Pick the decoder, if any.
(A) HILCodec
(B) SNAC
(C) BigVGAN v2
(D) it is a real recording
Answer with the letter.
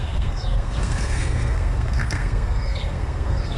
B